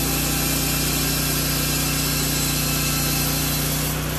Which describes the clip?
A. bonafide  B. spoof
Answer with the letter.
A